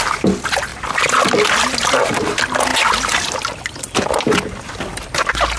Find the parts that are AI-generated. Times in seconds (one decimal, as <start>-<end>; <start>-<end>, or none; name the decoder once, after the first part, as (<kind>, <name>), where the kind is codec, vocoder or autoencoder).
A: none